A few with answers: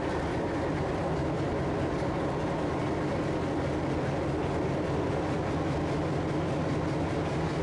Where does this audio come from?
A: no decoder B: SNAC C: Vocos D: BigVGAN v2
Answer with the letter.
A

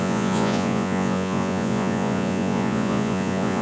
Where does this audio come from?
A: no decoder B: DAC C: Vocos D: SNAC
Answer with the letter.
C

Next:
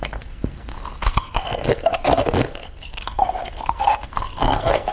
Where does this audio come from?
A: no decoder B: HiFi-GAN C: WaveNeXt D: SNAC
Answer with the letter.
D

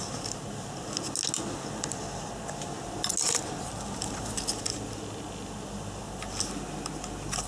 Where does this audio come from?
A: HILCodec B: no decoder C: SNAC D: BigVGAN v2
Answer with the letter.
B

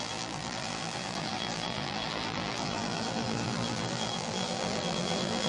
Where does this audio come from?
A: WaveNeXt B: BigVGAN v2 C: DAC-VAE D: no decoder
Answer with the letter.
B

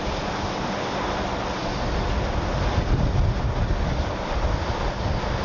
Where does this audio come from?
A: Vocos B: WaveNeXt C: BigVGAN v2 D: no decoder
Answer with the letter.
D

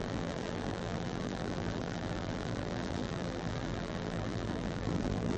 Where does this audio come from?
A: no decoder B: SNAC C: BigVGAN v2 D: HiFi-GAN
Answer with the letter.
C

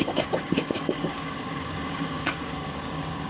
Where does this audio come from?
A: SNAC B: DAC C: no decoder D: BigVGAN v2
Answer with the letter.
B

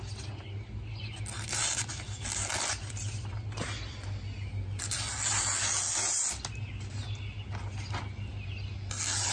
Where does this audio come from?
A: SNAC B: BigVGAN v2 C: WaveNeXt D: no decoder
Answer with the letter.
D